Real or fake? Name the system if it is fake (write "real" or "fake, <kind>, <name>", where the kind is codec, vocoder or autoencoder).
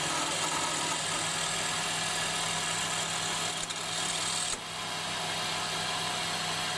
real